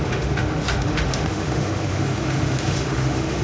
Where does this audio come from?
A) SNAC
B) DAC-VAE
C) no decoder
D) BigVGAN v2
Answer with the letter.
B